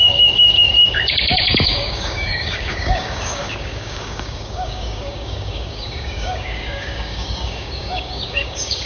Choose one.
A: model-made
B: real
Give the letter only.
A